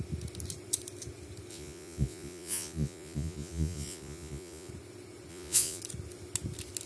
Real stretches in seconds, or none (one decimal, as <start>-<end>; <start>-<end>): 0.0-1.5; 4.7-5.3; 5.8-6.9